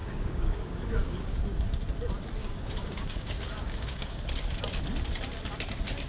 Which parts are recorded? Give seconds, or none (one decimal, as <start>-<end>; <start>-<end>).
1.4-2.4; 4.2-6.1